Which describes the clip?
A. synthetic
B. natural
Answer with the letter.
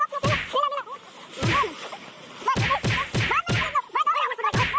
B